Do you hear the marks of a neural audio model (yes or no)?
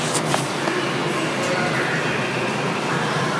no